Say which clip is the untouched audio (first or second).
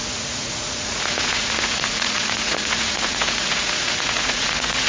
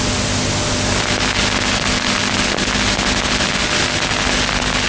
second